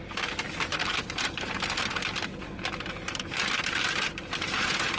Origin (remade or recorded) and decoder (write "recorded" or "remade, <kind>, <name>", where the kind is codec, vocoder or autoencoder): recorded